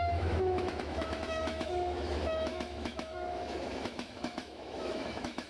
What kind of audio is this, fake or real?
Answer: fake